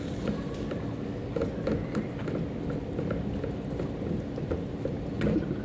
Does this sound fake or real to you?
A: real